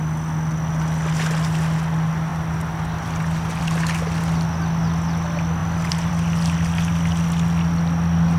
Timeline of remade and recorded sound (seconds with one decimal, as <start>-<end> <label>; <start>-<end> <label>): 0.0-8.4 recorded